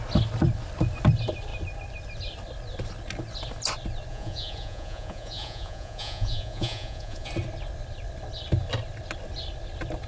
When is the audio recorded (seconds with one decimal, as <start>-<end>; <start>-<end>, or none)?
0.0-4.1; 7.3-10.1